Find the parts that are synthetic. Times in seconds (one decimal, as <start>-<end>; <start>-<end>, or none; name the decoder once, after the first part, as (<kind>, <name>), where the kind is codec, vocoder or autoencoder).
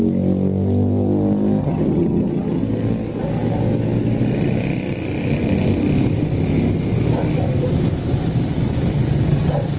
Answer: 1.6-2.6 (vocoder, HiFi-GAN)